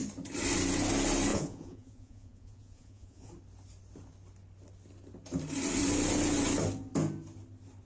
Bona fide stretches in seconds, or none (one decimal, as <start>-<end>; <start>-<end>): 0.0-1.3; 3.3-7.8